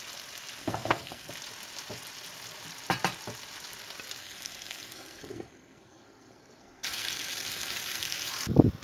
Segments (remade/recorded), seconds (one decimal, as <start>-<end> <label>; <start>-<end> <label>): 0.0-0.6 recorded; 0.6-1.3 remade; 1.3-4.2 recorded; 4.2-8.3 remade; 8.3-8.8 recorded